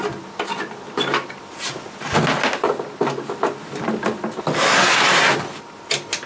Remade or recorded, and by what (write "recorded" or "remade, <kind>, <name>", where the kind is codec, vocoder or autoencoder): recorded